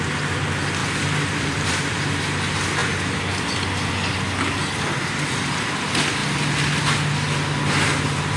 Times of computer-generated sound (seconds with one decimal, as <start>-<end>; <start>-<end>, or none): 0.8-2.1